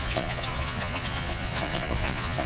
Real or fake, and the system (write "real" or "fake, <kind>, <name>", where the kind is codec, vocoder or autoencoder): fake, vocoder, Vocos